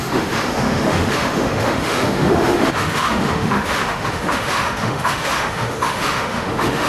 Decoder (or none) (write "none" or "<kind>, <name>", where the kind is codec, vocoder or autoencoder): autoencoder, DAC-VAE